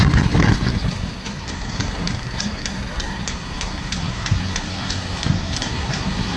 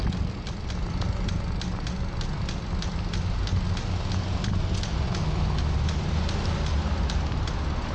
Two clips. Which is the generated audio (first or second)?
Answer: first